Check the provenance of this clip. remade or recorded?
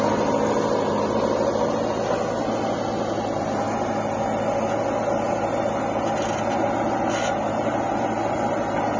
recorded